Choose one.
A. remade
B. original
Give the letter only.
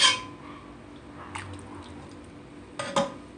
B